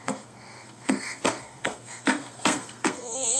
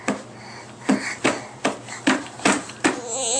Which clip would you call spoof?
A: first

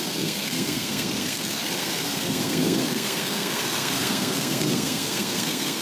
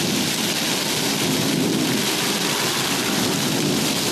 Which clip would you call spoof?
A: first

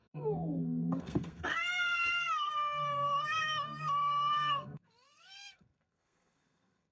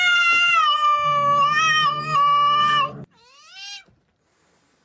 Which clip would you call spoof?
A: first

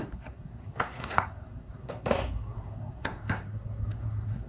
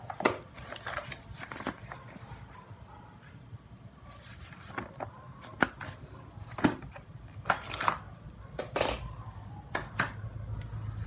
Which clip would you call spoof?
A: first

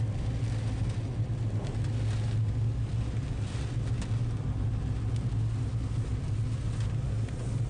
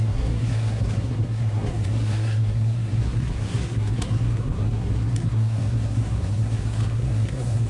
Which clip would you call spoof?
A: second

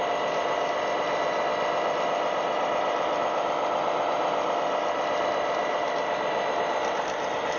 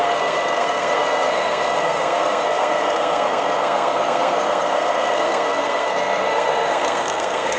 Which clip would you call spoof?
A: second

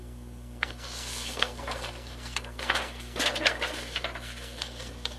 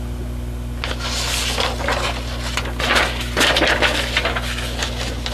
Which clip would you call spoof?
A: first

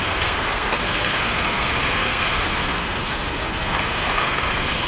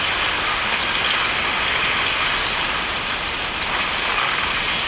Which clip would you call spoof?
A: first